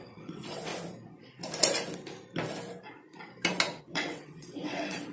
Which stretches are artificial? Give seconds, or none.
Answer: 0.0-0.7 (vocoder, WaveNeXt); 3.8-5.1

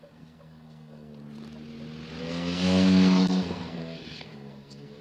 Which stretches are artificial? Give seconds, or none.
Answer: 0.0-1.1 (codec, SNAC); 2.2-5.0

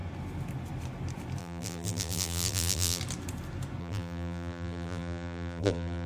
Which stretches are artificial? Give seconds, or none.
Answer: 1.4-3.0 (vocoder, BigVGAN v2); 3.8-6.1

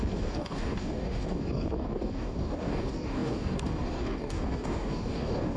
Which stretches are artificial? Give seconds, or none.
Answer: 0.0-5.6 (codec, DAC)

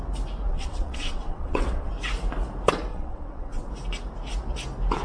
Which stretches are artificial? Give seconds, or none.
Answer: 0.5-1.9 (vocoder, WaveNeXt); 2.9-3.7

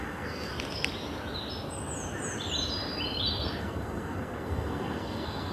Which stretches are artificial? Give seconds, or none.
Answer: 0.0-0.5 (codec, SNAC); 3.6-5.5